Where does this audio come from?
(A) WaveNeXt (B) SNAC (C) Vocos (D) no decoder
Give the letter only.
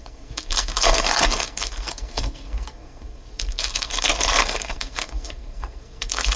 B